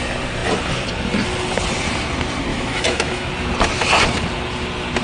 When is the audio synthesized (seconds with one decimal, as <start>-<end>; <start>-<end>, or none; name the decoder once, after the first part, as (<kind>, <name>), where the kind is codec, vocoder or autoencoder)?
2.5-3.3 (autoencoder, DAC-VAE)